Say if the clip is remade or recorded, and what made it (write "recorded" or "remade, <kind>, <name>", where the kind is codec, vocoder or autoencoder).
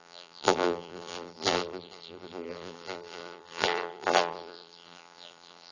remade, vocoder, BigVGAN v2